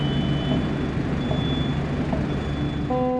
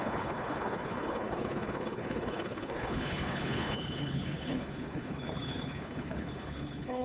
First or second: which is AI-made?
second